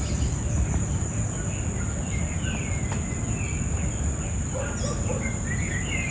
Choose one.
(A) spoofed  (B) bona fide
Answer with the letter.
B